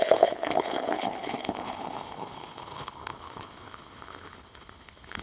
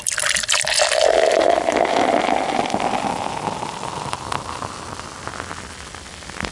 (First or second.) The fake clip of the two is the first